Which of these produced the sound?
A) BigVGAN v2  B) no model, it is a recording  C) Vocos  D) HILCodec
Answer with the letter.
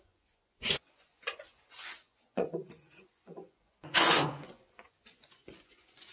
C